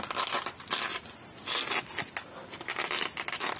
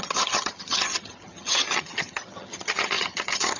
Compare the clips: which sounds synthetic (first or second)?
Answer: second